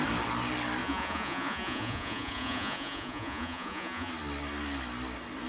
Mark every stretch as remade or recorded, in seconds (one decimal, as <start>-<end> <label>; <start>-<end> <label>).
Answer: 0.0-0.8 recorded; 0.8-4.1 remade; 4.1-5.5 recorded